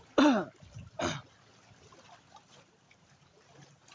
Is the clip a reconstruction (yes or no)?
no